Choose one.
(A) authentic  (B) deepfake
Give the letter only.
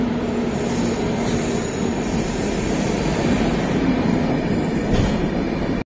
A